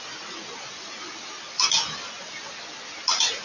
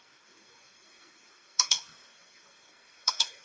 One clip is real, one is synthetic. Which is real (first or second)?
first